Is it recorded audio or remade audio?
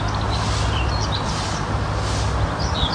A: recorded